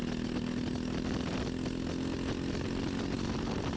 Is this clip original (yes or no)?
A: yes